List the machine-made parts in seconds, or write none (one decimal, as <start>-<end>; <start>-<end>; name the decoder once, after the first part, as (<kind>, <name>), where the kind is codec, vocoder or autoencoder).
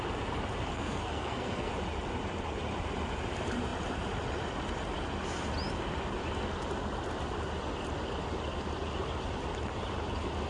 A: 0.7-1.7 (codec, SNAC)